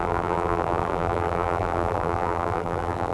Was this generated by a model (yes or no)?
yes